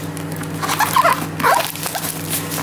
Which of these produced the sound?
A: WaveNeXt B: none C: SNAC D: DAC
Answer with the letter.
B